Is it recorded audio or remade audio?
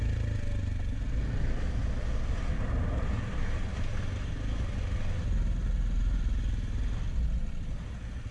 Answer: recorded